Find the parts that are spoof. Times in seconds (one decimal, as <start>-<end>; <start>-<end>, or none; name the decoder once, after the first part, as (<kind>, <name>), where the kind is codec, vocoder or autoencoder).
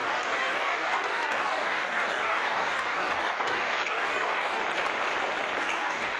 0.0-4.6 (codec, DAC); 5.6-6.2